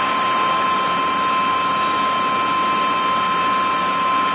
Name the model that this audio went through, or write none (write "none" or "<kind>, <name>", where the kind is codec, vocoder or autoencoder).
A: none